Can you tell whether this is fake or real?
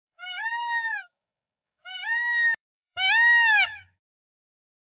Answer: fake